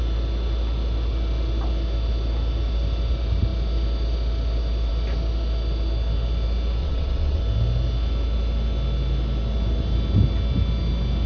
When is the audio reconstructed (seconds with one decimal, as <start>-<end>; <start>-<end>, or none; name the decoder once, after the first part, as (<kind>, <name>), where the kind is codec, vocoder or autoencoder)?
6.8-7.4 (vocoder, WaveNeXt)